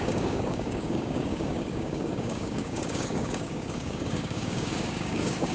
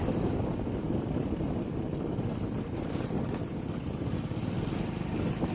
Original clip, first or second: second